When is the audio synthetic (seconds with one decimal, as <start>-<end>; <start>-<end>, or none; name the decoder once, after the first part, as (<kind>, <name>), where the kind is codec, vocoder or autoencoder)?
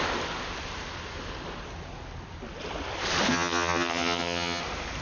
3.3-4.6 (vocoder, HiFi-GAN)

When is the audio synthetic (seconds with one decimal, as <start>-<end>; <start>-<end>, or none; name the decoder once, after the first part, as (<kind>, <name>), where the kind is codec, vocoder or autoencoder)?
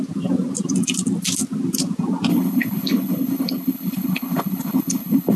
2.3-5.4 (codec, HILCodec)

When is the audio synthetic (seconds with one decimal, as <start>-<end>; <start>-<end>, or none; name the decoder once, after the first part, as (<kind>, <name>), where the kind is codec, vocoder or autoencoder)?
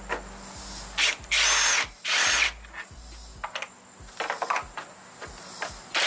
none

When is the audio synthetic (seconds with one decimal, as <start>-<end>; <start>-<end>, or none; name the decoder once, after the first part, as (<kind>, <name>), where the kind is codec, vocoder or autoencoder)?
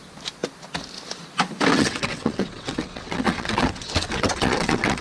1.7-5.0 (vocoder, WaveNeXt)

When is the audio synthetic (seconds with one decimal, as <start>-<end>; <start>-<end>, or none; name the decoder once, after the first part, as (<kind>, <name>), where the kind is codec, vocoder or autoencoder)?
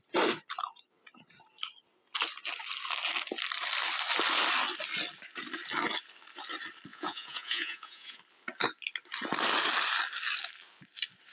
6.9-8.2 (vocoder, Vocos)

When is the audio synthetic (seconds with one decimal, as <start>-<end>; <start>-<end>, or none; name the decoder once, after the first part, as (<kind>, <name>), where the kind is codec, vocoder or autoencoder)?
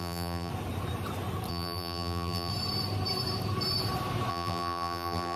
0.0-0.5 (vocoder, BigVGAN v2); 1.5-2.5; 4.3-5.4